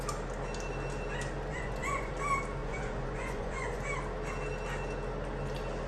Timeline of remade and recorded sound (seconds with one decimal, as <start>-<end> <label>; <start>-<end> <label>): 0.0-1.5 recorded; 1.5-2.1 remade; 2.1-2.6 recorded; 2.6-3.8 remade; 3.8-5.9 recorded